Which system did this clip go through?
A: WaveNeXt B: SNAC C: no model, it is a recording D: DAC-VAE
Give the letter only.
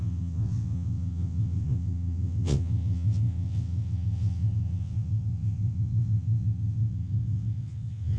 A